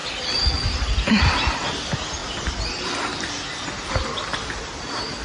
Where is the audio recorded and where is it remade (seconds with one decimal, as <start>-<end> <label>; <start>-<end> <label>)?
0.0-0.5 remade; 0.5-2.2 recorded; 2.2-3.9 remade; 3.9-5.2 recorded